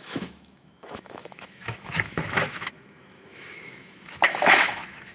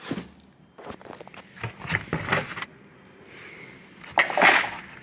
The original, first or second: second